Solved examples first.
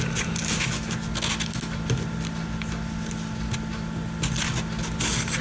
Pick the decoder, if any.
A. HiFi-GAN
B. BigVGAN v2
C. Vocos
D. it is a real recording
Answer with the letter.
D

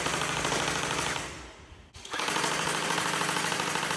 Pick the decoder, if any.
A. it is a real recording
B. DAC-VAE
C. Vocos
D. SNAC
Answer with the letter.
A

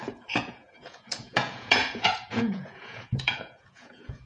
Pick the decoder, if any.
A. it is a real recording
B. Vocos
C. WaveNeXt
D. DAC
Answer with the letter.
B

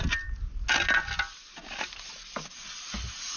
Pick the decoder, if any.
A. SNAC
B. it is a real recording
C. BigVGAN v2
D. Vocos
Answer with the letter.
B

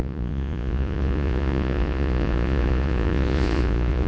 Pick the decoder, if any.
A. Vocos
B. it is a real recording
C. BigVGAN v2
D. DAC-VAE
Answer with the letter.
A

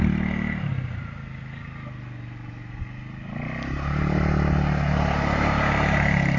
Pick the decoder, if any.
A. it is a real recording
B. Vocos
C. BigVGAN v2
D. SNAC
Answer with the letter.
A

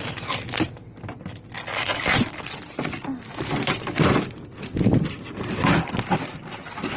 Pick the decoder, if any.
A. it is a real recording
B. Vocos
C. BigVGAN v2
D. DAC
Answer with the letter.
A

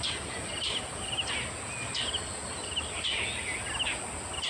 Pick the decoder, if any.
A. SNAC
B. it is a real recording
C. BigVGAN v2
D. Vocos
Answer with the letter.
B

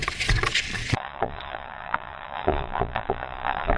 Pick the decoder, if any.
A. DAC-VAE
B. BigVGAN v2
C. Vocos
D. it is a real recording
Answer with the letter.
C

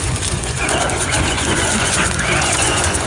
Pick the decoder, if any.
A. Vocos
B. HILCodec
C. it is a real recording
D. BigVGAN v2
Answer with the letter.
A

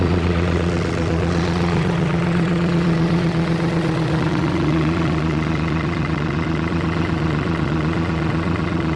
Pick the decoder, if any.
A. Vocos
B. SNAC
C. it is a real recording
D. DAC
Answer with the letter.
A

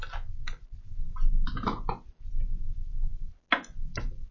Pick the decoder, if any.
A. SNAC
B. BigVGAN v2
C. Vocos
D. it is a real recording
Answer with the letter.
D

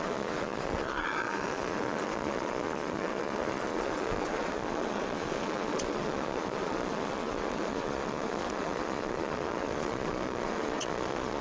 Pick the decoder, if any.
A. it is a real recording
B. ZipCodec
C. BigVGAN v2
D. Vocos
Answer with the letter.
D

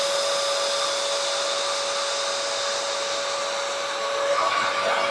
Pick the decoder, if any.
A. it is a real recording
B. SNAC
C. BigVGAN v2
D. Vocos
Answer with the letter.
A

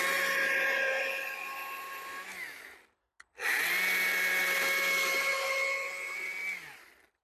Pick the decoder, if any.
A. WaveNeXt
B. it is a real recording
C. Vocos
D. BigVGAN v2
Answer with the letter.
B